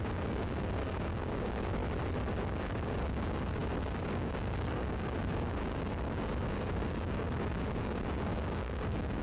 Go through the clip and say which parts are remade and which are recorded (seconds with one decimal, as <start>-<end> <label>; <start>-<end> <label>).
0.0-1.8 remade; 1.8-2.4 recorded; 2.4-9.2 remade